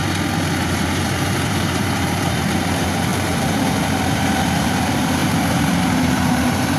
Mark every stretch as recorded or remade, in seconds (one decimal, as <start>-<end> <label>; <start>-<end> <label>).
0.0-0.6 recorded; 0.6-6.8 remade